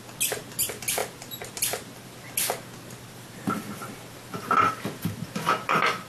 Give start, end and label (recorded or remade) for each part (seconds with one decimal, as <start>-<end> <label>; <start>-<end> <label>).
0.0-6.1 recorded